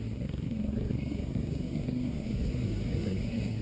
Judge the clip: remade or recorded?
remade